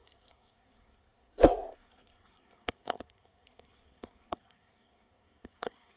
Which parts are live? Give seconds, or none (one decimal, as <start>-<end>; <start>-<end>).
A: none